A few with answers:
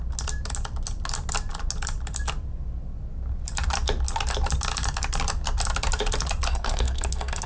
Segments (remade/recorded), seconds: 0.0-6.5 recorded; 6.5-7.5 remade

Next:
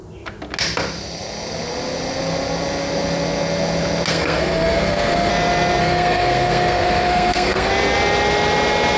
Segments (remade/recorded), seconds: 0.0-4.1 recorded; 4.1-5.3 remade; 5.3-5.8 recorded; 5.8-7.7 remade; 7.7-9.0 recorded

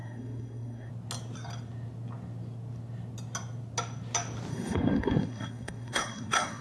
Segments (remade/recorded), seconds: 0.0-0.9 remade; 0.9-4.5 recorded; 4.5-6.6 remade

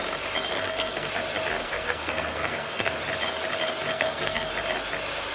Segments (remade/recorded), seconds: 0.0-0.5 recorded; 0.5-1.1 remade; 1.1-1.6 recorded; 1.6-2.9 remade; 2.9-3.9 recorded; 3.9-4.5 remade; 4.5-5.3 recorded

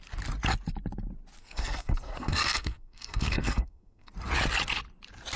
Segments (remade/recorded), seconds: 0.0-1.4 recorded; 1.4-4.1 remade; 4.1-5.4 recorded